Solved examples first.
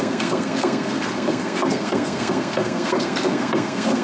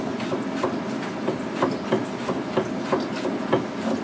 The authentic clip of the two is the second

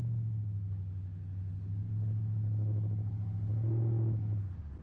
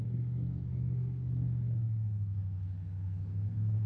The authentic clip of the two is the first